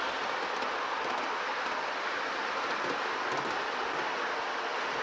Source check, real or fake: real